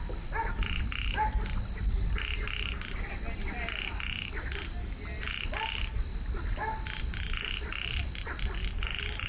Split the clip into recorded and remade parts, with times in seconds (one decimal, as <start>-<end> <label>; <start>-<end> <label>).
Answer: 0.0-9.3 recorded